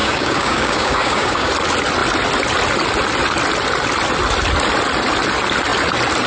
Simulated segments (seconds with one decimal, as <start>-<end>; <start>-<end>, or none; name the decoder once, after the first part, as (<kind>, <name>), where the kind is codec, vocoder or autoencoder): 0.0-1.5 (codec, DAC)